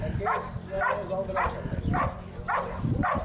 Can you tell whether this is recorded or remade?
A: recorded